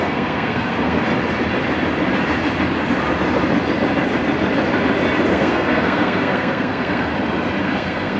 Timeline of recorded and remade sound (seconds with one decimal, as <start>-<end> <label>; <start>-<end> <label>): 0.0-1.0 remade; 1.0-5.3 recorded; 5.3-7.1 remade; 7.1-7.6 recorded; 7.6-8.2 remade